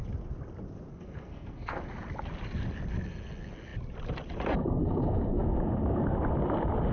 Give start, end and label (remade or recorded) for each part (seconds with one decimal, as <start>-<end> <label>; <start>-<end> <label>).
0.0-0.9 recorded; 0.9-1.8 remade; 1.8-6.9 recorded